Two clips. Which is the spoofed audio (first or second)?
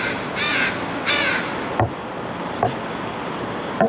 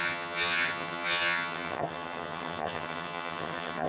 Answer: second